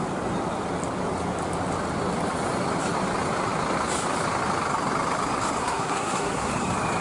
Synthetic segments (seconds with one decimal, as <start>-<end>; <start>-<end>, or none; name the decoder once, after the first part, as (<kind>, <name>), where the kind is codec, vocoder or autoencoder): 5.6-6.5 (codec, SNAC)